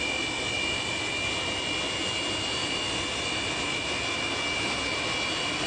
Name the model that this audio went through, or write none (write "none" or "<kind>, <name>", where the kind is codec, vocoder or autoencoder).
none